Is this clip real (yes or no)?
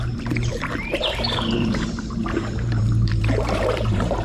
no